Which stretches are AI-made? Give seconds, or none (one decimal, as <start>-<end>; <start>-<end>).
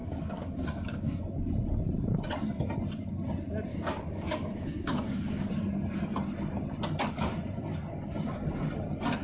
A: 0.0-1.2; 3.7-5.5